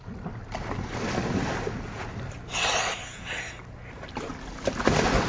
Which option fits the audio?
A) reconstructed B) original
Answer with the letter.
B